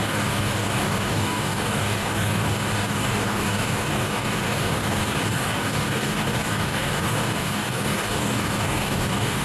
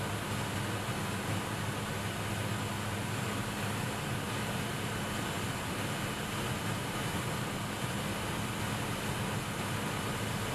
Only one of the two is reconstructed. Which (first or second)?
first